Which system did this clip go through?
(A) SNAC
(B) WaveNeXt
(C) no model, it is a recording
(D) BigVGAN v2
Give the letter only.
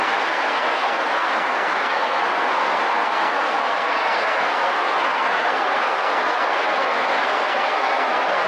A